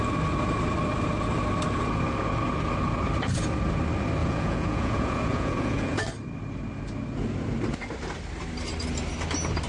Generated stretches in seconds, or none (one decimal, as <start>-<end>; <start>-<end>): 4.2-6.0